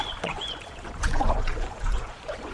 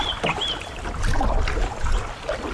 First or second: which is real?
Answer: second